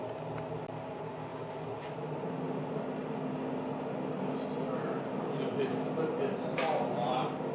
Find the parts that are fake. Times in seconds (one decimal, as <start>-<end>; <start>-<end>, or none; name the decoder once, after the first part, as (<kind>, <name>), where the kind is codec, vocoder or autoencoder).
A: none